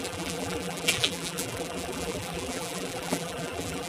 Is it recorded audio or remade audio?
remade